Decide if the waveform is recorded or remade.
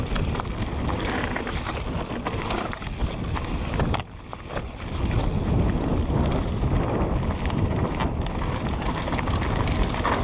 recorded